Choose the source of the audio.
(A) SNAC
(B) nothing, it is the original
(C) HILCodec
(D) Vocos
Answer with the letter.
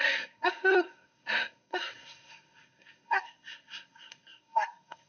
A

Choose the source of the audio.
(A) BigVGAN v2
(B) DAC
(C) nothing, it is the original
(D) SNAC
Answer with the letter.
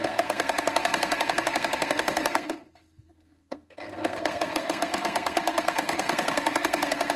D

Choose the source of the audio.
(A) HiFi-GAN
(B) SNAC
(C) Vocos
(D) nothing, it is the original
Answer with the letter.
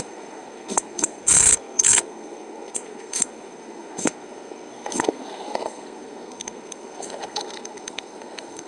B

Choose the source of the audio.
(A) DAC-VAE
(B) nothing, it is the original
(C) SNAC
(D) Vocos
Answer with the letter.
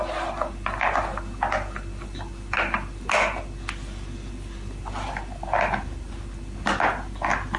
B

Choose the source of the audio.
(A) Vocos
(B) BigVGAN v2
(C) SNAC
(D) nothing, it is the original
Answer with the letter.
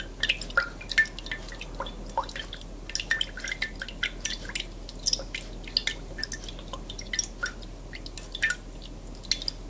D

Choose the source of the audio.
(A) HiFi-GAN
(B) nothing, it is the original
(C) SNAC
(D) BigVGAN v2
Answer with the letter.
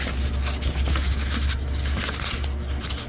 B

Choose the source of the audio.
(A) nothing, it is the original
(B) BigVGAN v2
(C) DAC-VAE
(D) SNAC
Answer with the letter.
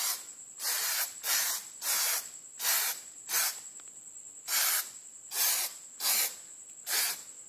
A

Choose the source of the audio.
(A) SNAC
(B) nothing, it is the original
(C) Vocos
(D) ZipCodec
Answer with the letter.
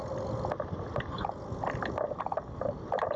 B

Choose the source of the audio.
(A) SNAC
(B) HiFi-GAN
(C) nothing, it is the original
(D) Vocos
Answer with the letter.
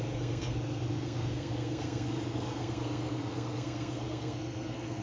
A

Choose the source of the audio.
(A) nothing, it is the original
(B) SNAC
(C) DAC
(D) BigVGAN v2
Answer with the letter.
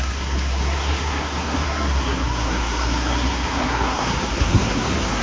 B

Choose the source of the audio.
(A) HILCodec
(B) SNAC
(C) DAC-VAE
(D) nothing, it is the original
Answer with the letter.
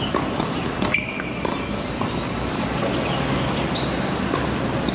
D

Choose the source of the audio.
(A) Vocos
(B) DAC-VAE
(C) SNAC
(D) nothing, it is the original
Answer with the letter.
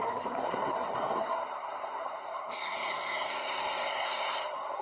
C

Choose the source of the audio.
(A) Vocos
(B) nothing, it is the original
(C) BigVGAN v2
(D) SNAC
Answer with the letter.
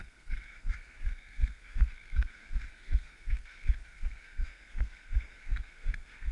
D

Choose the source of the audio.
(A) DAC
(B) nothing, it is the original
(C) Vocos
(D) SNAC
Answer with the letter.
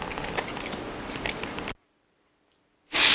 B